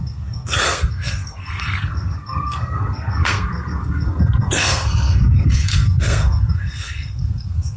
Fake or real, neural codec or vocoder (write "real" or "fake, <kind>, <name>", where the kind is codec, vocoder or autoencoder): fake, codec, SNAC